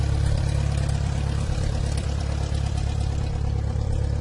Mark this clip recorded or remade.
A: remade